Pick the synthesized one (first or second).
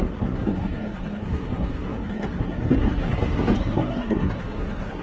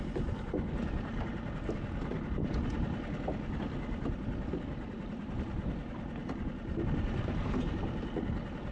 first